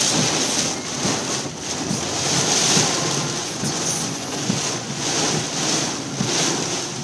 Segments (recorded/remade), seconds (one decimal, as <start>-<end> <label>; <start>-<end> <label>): 0.0-3.4 recorded; 3.4-5.2 remade; 5.2-7.0 recorded